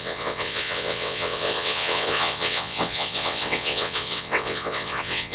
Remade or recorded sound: remade